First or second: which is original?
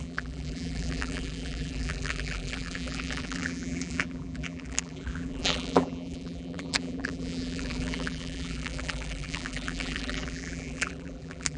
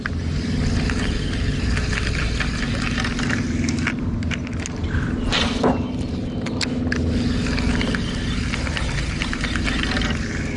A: second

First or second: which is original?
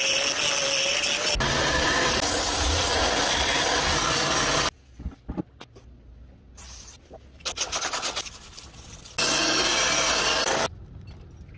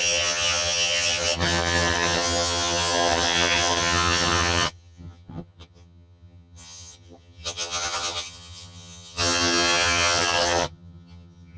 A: first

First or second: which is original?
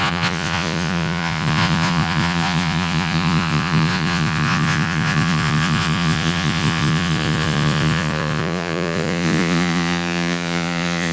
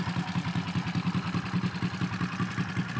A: second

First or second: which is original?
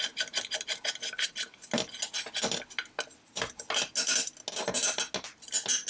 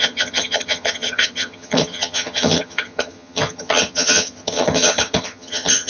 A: first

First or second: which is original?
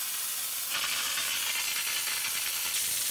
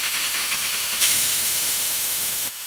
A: first